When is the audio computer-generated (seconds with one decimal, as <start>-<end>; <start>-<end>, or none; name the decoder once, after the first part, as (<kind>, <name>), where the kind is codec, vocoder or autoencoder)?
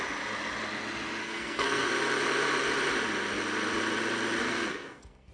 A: 1.2-1.9 (codec, SNAC); 4.4-5.3